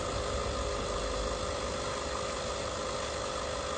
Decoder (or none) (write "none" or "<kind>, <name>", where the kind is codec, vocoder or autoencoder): none